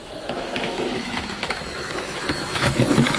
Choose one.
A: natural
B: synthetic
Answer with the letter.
B